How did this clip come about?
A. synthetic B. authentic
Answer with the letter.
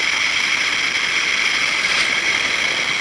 B